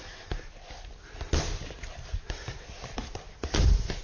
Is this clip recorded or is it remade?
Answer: recorded